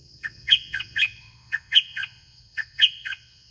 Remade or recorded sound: remade